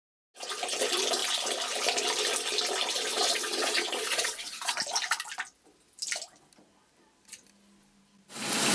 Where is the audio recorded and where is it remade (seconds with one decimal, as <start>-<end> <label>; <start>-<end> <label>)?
0.0-3.1 recorded; 3.1-4.8 remade; 4.8-8.7 recorded